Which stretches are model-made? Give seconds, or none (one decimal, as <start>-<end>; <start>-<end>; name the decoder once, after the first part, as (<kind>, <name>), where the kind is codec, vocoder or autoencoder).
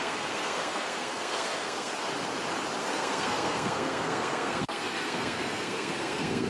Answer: 0.0-1.9 (codec, SNAC); 2.8-6.5